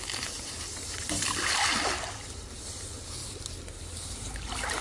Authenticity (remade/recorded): recorded